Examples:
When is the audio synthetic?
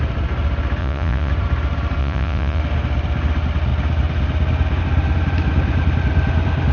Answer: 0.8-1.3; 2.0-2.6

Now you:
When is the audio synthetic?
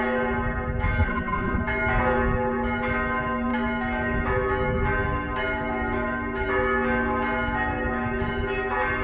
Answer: 1.0-1.6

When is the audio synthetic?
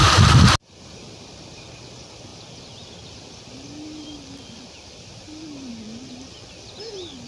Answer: 2.3-6.7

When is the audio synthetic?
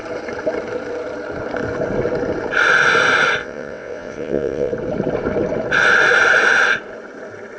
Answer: 3.4-4.7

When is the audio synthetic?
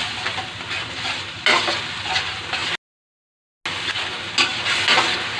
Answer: none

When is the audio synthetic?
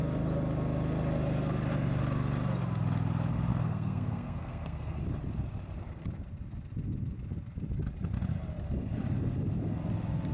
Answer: 3.5-5.0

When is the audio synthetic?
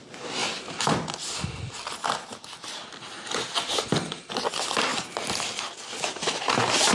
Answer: none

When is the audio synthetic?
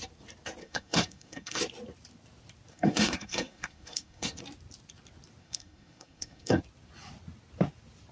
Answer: 0.6-1.6; 2.7-4.4; 5.4-6.6